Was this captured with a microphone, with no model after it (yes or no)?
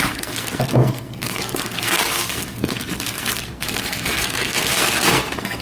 no